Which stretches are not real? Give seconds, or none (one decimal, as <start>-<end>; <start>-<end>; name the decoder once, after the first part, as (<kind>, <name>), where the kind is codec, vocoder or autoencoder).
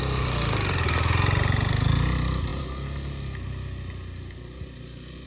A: none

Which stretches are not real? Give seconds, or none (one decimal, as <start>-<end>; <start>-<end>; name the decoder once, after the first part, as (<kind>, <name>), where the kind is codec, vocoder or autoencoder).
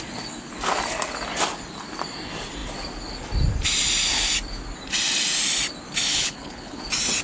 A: 6.1-6.8 (codec, HILCodec)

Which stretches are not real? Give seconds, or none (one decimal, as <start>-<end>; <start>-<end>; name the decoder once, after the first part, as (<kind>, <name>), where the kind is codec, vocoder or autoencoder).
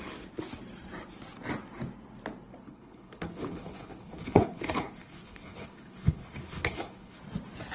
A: 2.6-7.2 (codec, HILCodec)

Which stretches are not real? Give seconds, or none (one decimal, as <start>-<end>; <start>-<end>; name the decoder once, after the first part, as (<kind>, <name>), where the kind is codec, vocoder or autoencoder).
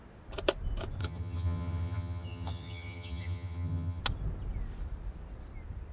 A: 1.0-4.0 (vocoder, HiFi-GAN)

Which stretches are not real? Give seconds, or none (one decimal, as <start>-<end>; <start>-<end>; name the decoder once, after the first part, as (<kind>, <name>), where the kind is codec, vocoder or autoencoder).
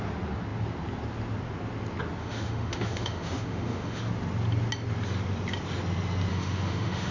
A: 2.2-4.0 (autoencoder, DAC-VAE); 6.3-7.1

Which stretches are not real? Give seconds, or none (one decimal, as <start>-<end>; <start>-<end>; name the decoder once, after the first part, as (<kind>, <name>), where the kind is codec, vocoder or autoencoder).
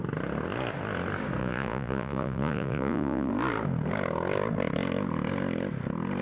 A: 1.4-3.3 (vocoder, Vocos)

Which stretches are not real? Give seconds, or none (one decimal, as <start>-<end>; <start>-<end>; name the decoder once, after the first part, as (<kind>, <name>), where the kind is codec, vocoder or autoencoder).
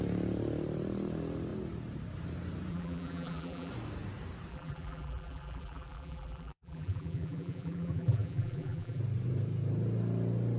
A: 2.7-3.7 (vocoder, BigVGAN v2); 4.5-9.0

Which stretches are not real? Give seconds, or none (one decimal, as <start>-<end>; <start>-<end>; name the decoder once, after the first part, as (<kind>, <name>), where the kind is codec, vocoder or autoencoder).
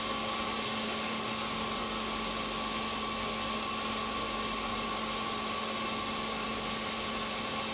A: none